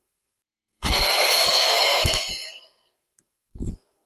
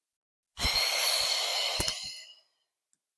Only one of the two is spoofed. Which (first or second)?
first